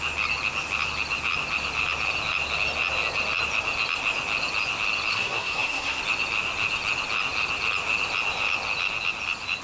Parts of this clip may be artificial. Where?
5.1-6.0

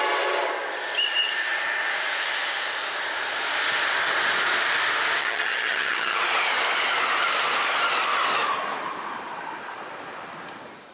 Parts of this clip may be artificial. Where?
5.2-6.2

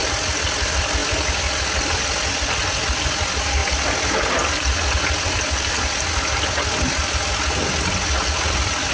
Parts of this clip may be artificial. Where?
none

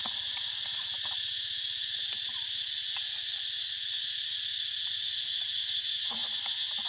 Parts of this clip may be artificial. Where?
none

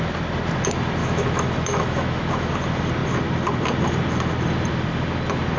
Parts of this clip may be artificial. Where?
1.0-2.5

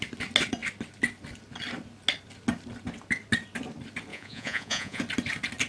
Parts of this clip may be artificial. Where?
4.1-5.0

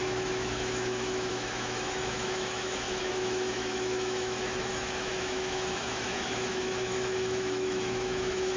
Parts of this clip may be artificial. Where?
0.0-8.6

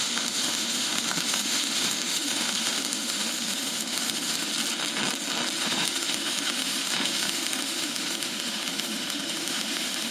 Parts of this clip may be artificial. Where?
0.0-4.5; 5.6-10.1